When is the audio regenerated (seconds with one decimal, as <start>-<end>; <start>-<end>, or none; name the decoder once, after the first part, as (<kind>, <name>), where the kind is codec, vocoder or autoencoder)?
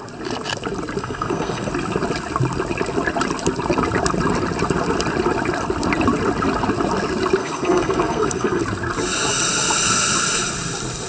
1.0-1.7 (codec, SNAC); 7.4-8.6